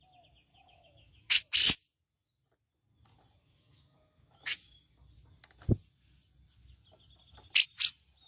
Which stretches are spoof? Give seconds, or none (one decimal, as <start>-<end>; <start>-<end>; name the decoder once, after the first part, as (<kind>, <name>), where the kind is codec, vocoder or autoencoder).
0.5-1.4 (autoencoder, DAC-VAE); 3.4-4.9